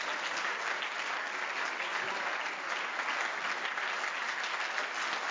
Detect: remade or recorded recorded